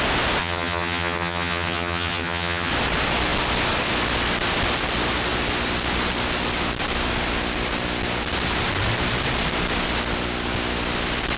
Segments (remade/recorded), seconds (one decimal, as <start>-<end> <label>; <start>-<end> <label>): 0.0-0.4 recorded; 0.4-2.7 remade; 2.7-11.4 recorded